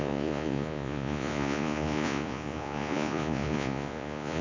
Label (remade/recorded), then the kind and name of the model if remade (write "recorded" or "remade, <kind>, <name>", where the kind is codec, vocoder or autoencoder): remade, vocoder, Vocos